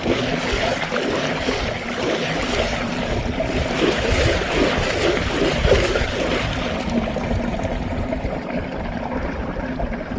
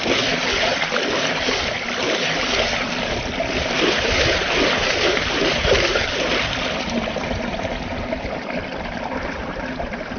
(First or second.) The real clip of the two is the first